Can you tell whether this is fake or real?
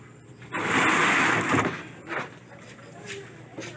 real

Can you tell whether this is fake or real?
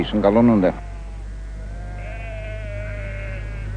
real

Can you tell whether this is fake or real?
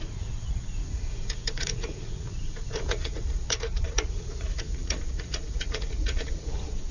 fake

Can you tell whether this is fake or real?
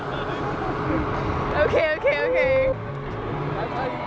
real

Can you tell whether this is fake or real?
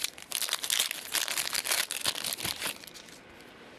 real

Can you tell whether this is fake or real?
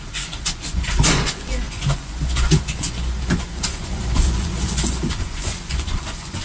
fake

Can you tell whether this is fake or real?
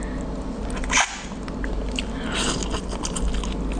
real